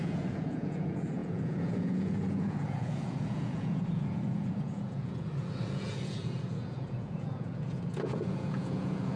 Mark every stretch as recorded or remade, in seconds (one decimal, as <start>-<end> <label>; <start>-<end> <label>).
0.0-9.2 remade